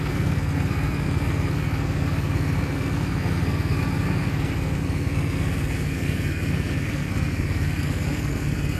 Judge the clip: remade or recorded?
remade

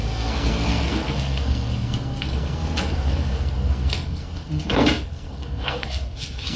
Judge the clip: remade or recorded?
remade